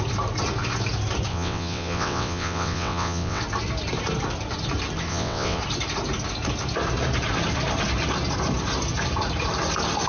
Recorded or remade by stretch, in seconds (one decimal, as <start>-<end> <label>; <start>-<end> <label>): 0.0-1.3 recorded; 1.3-3.4 remade; 3.4-5.1 recorded; 5.1-5.6 remade; 5.6-10.1 recorded